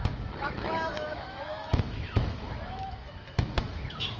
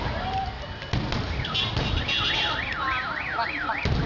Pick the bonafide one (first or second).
second